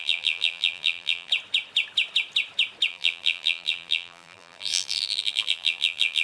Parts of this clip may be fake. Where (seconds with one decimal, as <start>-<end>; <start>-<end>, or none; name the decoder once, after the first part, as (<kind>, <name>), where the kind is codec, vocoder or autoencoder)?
0.0-1.3 (vocoder, BigVGAN v2); 2.9-6.2

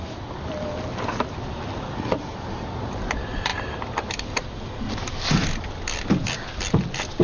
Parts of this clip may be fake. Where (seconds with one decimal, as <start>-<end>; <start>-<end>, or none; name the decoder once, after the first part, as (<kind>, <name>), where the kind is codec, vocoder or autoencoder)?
none

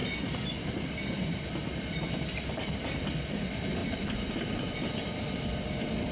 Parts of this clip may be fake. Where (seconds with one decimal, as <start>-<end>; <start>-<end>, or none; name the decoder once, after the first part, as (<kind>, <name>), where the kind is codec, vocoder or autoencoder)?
1.6-2.9 (vocoder, BigVGAN v2); 3.8-4.7